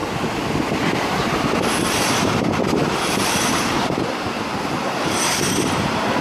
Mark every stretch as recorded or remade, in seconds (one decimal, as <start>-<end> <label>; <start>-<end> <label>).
0.0-2.1 recorded; 2.1-6.2 remade